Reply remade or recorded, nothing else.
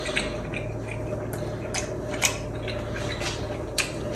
recorded